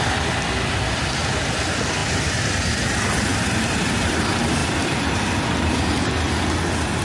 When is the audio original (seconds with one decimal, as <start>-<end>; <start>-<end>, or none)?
0.0-2.0; 2.6-3.3; 4.1-4.6; 5.4-7.0